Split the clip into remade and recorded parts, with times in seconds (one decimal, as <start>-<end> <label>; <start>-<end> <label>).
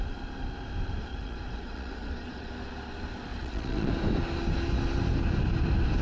0.0-1.1 recorded; 1.1-2.5 remade; 2.5-3.3 recorded; 3.3-3.9 remade; 3.9-6.0 recorded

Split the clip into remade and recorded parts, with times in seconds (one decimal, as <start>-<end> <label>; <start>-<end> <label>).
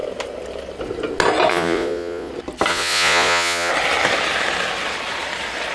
0.0-1.5 recorded; 1.5-2.3 remade; 2.3-2.7 recorded; 2.7-3.7 remade; 3.7-5.7 recorded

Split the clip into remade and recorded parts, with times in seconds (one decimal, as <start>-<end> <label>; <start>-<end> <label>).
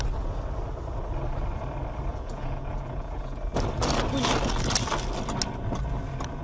0.0-2.1 recorded; 2.1-3.4 remade; 3.4-6.4 recorded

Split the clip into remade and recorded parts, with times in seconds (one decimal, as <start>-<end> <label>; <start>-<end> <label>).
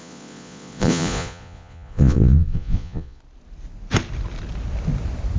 0.0-3.2 remade; 3.2-5.4 recorded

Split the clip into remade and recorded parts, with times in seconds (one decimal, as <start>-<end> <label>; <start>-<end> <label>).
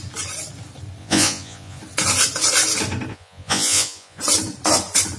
0.0-1.0 recorded; 1.0-1.8 remade; 1.8-3.1 recorded; 3.1-4.2 remade; 4.2-5.2 recorded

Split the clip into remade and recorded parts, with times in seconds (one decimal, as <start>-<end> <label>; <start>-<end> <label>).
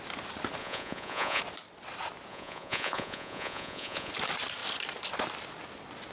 0.0-0.6 recorded; 0.6-1.4 remade; 1.4-2.3 recorded; 2.3-4.1 remade; 4.1-6.1 recorded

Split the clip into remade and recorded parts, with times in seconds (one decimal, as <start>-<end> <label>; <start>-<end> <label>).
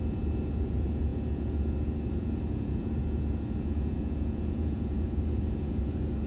0.0-6.3 remade